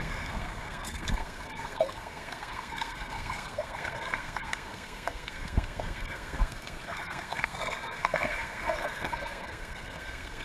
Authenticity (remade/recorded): remade